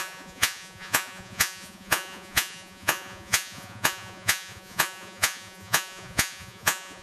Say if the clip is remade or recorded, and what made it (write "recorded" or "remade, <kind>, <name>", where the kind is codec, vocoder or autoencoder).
remade, vocoder, Vocos